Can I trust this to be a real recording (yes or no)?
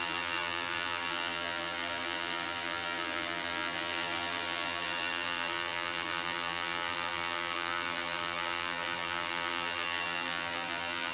no